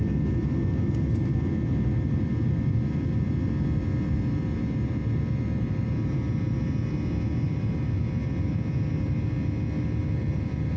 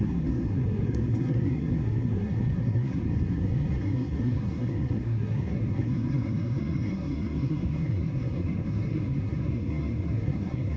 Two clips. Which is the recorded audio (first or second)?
first